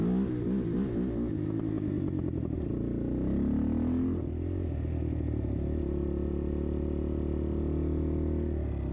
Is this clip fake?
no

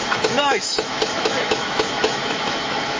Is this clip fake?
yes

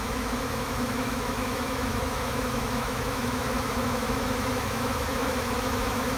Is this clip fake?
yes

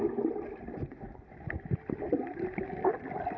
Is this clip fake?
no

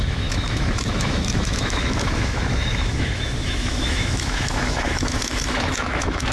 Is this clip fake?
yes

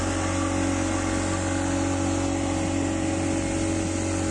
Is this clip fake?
no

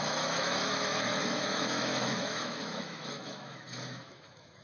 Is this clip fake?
yes